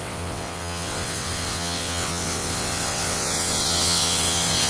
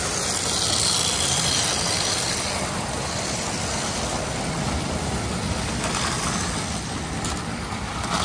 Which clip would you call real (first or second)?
second